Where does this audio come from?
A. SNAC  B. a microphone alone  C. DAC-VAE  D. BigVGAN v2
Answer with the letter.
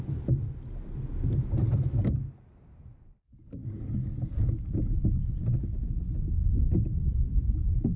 B